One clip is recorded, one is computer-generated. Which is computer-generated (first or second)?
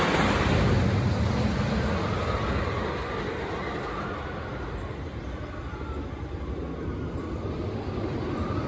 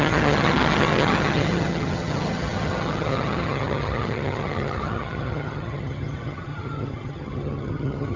second